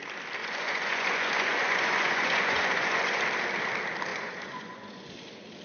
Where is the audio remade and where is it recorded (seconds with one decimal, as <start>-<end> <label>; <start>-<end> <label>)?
0.0-0.4 recorded; 0.4-3.2 remade; 3.2-4.1 recorded; 4.1-5.1 remade; 5.1-5.6 recorded